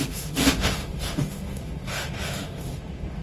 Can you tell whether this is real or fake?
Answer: fake